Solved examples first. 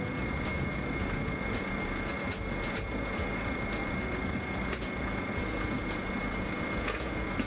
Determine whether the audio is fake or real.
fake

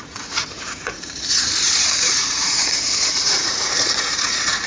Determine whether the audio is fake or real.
fake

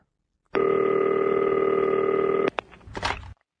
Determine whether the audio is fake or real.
real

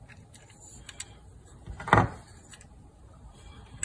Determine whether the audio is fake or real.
real